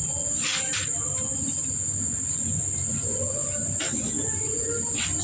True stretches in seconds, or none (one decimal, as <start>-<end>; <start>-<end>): 0.0-3.4